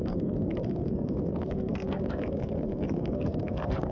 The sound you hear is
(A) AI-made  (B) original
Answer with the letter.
A